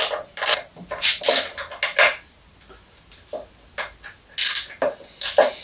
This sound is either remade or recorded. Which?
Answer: recorded